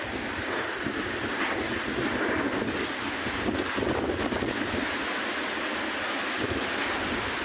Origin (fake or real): real